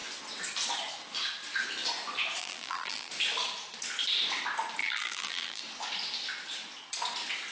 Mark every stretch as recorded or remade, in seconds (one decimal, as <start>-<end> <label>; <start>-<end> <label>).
0.0-2.4 recorded; 2.4-3.1 remade; 3.1-4.8 recorded; 4.8-5.6 remade; 5.6-7.5 recorded